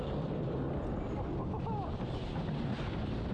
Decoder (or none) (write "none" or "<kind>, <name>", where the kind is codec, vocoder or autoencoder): none